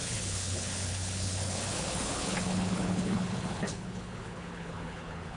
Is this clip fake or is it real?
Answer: fake